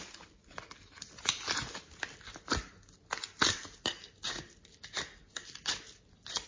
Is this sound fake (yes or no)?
no